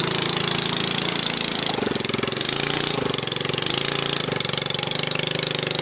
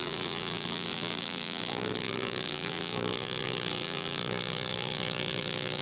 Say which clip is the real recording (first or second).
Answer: first